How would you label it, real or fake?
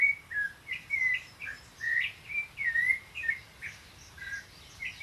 fake